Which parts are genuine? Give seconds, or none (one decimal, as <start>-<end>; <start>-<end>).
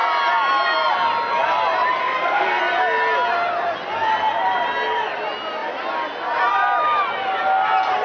0.0-2.0; 2.6-8.0